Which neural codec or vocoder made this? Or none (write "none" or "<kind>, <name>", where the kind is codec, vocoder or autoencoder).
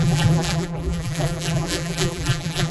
vocoder, BigVGAN v2